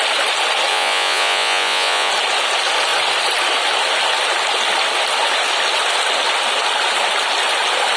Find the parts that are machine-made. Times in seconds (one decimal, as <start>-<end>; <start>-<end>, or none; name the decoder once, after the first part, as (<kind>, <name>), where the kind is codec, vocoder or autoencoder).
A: 0.7-2.1 (vocoder, Vocos)

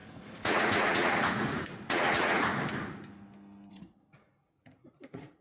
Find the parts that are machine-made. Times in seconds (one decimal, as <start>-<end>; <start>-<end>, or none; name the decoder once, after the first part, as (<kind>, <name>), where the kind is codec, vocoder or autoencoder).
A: 0.0-2.5 (vocoder, Vocos); 3.7-5.4

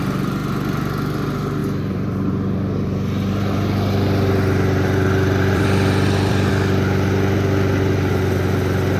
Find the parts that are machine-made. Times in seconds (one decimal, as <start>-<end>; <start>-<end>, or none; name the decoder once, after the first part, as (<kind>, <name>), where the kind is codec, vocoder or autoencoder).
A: 1.6-6.5 (vocoder, BigVGAN v2)

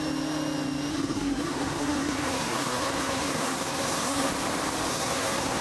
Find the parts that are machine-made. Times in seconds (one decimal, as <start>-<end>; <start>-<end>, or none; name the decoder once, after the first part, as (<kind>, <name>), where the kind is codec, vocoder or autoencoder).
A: 0.9-4.3 (codec, SNAC); 4.9-5.6

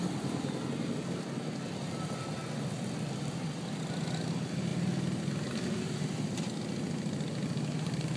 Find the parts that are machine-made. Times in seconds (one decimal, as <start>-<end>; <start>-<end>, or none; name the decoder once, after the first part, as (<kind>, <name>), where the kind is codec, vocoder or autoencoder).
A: none